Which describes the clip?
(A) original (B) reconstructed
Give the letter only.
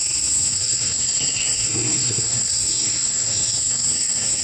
B